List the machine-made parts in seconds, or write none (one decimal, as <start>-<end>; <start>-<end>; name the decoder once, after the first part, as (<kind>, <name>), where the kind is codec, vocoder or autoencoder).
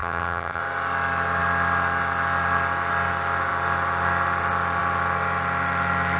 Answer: 0.0-0.6 (vocoder, HiFi-GAN)